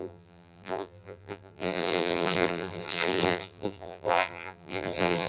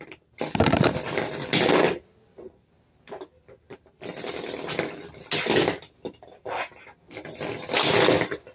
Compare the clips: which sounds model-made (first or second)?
first